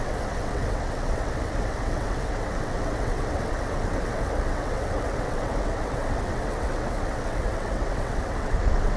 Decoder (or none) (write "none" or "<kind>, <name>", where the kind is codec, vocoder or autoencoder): vocoder, WaveNeXt